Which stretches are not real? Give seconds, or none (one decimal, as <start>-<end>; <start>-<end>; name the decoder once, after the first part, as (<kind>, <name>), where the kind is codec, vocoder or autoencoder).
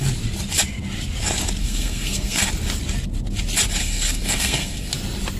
1.6-2.5 (codec, SNAC); 3.8-4.9